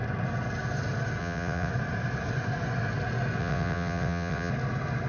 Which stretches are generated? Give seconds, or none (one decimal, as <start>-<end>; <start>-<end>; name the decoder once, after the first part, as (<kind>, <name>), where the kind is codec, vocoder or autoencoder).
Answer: 1.2-1.7 (vocoder, WaveNeXt); 3.4-4.5